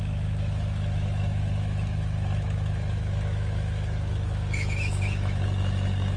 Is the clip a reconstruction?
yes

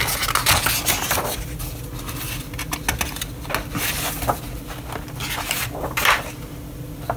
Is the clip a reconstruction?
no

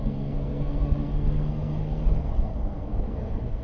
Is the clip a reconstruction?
yes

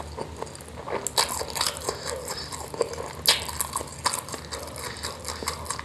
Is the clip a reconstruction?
no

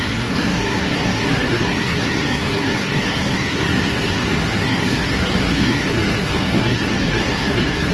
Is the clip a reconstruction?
yes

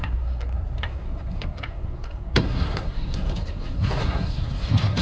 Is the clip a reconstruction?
yes